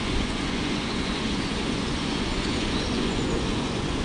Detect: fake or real fake